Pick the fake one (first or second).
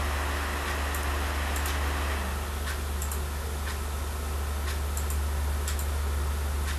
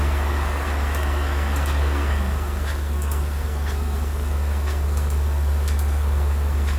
second